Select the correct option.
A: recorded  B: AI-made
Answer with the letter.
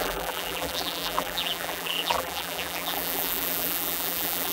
B